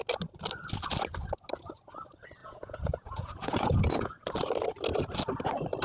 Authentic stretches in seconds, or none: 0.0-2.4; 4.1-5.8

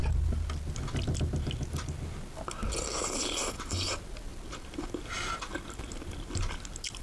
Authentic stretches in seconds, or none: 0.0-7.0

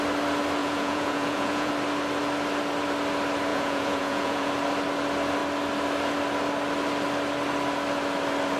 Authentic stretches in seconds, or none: 0.0-0.6; 1.7-3.5; 4.5-8.6